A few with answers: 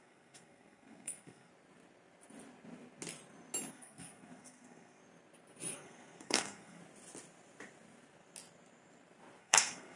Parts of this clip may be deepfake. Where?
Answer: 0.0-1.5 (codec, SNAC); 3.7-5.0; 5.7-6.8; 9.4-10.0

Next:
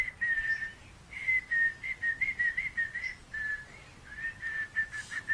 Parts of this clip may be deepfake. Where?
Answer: 0.0-0.7 (vocoder, BigVGAN v2); 3.9-5.3

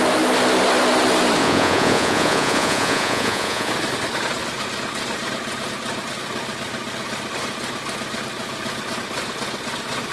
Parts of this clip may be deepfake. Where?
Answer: 1.4-3.7 (vocoder, Vocos)

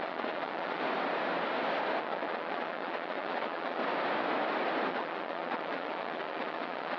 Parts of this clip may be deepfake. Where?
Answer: 0.0-0.8 (vocoder, Vocos); 2.0-3.8; 4.9-7.0

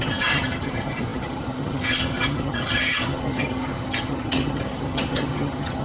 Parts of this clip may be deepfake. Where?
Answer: 0.0-5.8 (vocoder, HiFi-GAN)

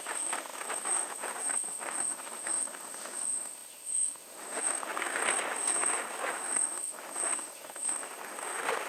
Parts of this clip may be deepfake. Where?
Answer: 0.0-8.9 (autoencoder, DAC-VAE)